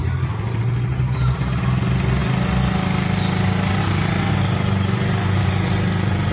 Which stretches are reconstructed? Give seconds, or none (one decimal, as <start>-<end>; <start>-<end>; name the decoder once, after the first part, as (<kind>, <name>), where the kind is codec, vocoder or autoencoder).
none

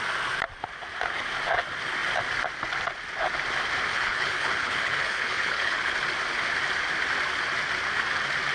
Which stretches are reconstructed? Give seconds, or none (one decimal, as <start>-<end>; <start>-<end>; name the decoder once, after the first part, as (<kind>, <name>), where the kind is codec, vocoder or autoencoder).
3.9-5.9 (codec, HILCodec)

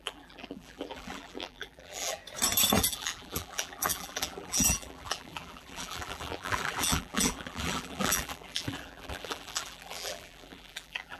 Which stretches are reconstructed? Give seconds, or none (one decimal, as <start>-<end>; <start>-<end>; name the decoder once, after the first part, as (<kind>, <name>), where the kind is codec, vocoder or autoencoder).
0.0-2.2 (vocoder, BigVGAN v2); 2.8-11.2

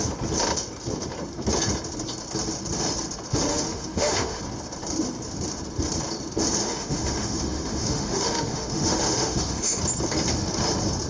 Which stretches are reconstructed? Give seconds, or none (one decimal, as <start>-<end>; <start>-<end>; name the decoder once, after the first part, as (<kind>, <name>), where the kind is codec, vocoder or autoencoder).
3.5-4.4 (autoencoder, DAC-VAE); 6.6-9.8